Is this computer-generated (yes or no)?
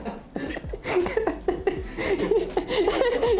no